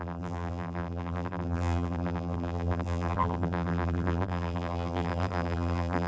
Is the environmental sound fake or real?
fake